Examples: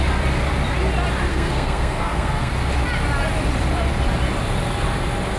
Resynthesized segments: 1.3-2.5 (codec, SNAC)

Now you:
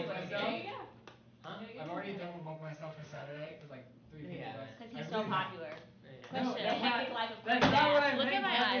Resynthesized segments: 2.2-3.7 (autoencoder, DAC-VAE)

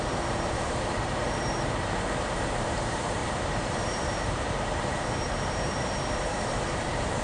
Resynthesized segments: 0.0-7.2 (vocoder, BigVGAN v2)